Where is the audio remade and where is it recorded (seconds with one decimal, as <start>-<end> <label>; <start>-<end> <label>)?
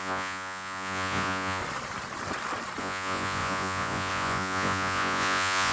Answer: 0.0-1.6 remade; 1.6-2.8 recorded; 2.8-5.7 remade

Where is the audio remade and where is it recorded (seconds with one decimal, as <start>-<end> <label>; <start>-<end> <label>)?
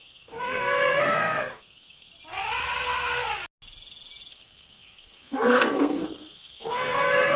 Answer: 0.0-2.1 remade; 2.1-4.3 recorded; 4.3-7.4 remade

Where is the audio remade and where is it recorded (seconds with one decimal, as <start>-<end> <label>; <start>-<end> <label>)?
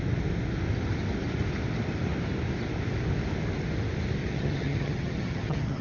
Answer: 0.0-4.2 recorded; 4.2-5.8 remade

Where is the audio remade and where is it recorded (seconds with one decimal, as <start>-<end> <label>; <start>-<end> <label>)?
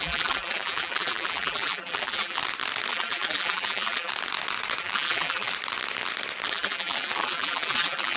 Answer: 0.0-2.4 remade; 2.4-2.9 recorded; 2.9-4.1 remade; 4.1-4.8 recorded; 4.8-5.5 remade; 5.5-6.5 recorded; 6.5-8.2 remade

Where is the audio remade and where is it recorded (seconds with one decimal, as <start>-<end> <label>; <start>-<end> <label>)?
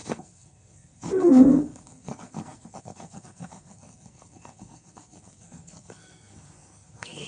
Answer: 0.0-7.3 remade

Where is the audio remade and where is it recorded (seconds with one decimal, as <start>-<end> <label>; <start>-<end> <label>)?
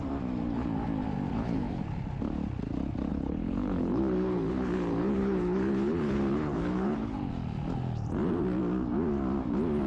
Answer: 0.0-1.3 recorded; 1.3-1.8 remade; 1.8-3.1 recorded; 3.1-7.3 remade; 7.3-9.9 recorded